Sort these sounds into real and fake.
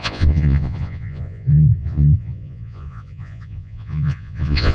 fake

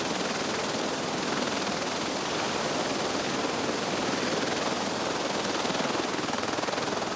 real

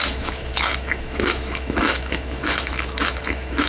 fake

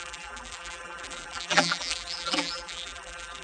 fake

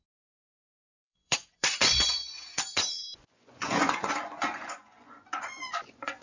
fake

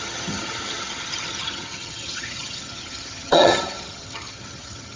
fake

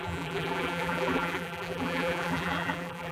fake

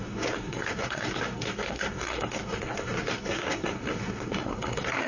fake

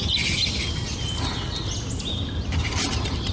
real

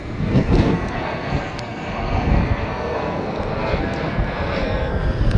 fake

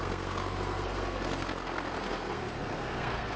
fake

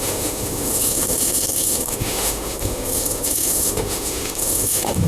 fake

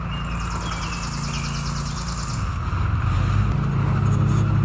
real